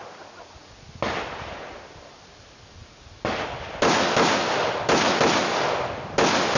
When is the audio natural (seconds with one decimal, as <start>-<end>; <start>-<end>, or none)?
0.0-6.6